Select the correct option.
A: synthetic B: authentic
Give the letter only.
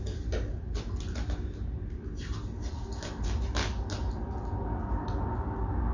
B